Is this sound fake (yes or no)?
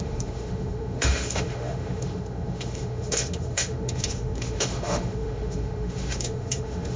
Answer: yes